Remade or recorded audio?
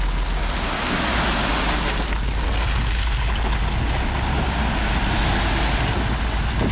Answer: recorded